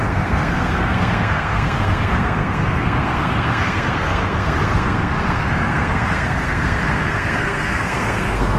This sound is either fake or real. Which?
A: fake